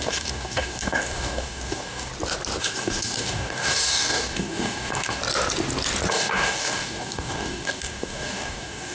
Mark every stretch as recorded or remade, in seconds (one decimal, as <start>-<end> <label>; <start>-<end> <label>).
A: 0.0-2.1 remade; 2.1-2.6 recorded; 2.6-5.2 remade; 5.2-6.1 recorded; 6.1-8.9 remade